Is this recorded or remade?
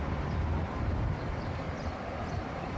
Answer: remade